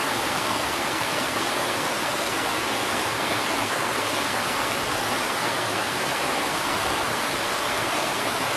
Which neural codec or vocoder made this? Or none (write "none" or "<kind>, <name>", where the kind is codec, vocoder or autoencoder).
codec, SNAC